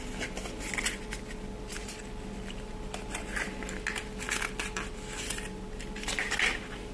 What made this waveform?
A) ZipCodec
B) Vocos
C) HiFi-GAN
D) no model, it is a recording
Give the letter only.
D